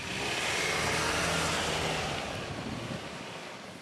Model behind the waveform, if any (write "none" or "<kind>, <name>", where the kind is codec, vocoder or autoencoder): none